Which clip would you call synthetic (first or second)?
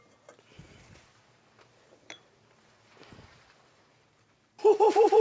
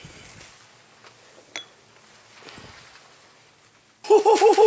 first